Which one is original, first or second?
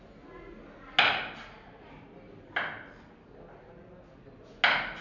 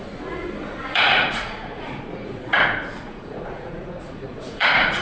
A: first